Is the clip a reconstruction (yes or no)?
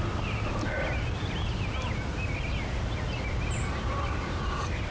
no